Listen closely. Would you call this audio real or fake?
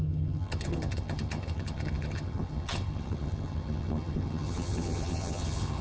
fake